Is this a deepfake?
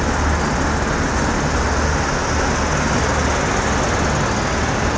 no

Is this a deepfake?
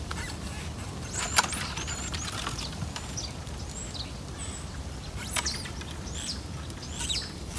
no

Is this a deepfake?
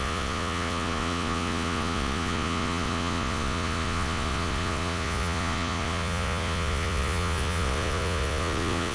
yes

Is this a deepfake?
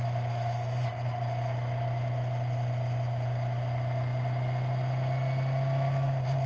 no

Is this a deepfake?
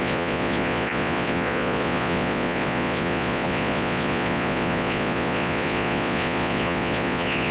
yes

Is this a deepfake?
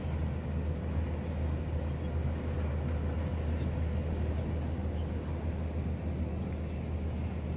no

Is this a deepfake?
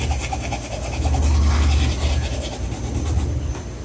no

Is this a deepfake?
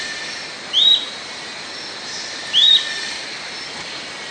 no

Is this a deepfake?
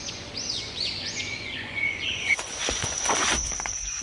yes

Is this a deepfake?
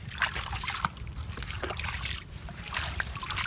no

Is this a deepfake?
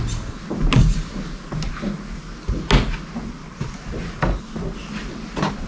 no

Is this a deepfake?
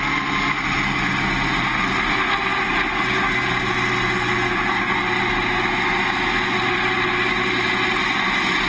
no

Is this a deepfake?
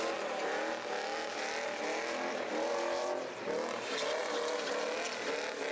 no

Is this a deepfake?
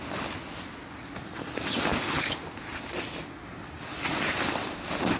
no